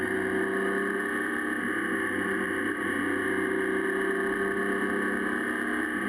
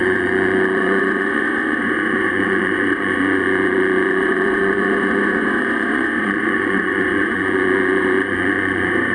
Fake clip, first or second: second